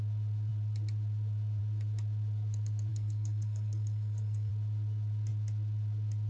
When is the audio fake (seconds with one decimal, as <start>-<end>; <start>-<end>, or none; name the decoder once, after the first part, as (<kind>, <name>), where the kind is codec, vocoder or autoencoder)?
2.9-4.5 (codec, SNAC)